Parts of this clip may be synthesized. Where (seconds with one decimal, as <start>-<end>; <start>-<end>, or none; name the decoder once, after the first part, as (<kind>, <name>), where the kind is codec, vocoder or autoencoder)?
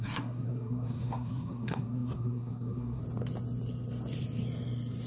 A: 0.0-3.0 (codec, SNAC)